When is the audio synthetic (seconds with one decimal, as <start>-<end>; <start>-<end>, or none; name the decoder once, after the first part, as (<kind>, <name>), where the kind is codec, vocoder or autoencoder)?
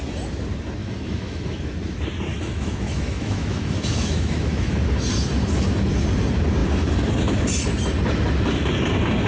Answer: 0.8-1.7 (autoencoder, DAC-VAE); 2.3-4.7